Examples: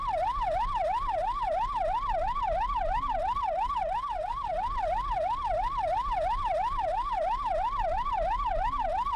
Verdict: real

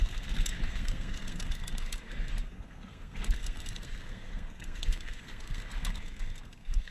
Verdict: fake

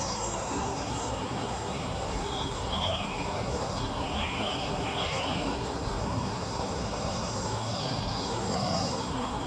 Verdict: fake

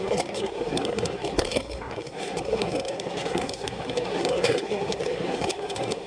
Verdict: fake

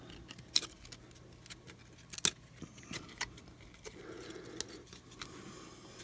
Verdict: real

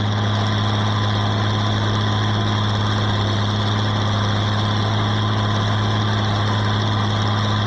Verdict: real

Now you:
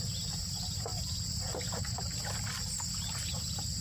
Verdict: real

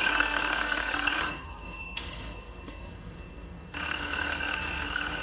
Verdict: fake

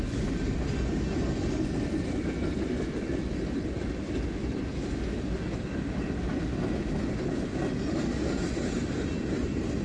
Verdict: real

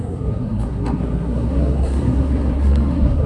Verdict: fake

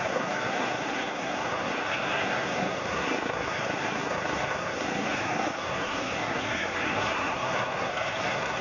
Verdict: fake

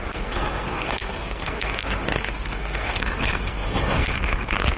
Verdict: fake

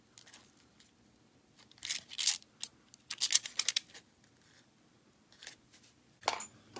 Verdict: real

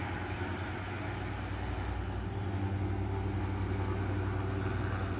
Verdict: real